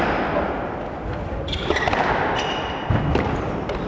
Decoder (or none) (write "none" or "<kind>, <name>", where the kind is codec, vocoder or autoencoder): none